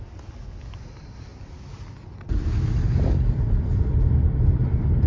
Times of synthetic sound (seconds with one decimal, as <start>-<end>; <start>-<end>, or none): none